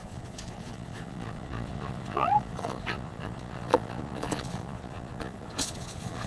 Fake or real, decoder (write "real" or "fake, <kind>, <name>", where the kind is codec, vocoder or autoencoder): fake, vocoder, Vocos